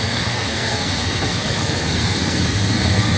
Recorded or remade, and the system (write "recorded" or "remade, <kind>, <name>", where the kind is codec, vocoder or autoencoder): remade, codec, SNAC